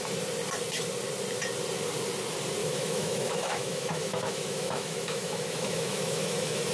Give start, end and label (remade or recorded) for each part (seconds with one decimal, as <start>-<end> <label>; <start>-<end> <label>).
0.0-2.6 recorded; 2.6-6.7 remade